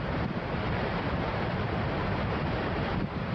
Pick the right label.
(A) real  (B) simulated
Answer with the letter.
B